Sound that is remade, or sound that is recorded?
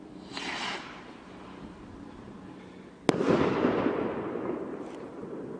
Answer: recorded